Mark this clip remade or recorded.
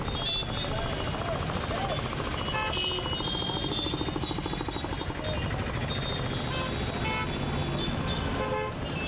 recorded